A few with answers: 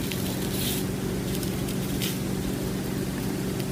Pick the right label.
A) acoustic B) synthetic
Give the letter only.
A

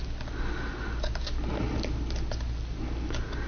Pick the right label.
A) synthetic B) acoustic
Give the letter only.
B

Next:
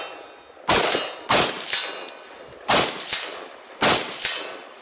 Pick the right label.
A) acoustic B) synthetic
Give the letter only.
A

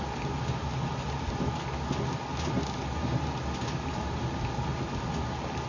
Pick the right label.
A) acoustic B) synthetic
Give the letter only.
A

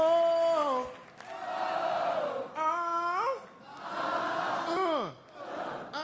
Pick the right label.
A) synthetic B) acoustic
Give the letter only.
B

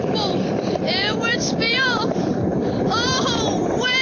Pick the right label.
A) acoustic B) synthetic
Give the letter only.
B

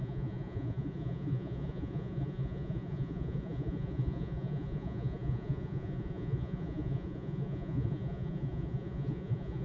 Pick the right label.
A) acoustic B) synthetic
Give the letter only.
B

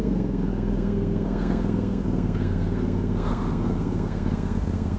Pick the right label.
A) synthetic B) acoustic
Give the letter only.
A